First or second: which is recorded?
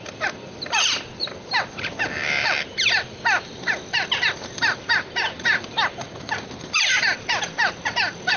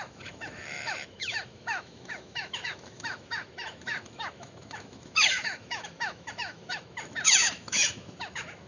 first